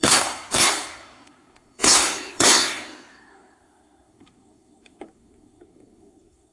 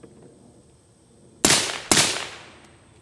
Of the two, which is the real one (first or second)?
second